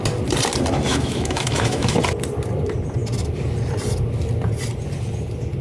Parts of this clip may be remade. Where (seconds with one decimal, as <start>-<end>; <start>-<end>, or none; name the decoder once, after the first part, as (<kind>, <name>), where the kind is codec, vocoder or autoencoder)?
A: 0.9-2.0 (autoencoder, DAC-VAE)